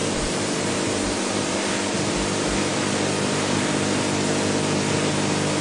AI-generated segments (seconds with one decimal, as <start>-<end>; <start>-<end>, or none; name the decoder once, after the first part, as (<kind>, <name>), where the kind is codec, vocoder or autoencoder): 0.0-2.1 (vocoder, BigVGAN v2)